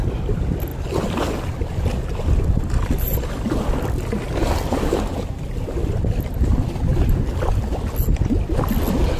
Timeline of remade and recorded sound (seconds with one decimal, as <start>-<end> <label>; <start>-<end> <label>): 0.0-9.2 recorded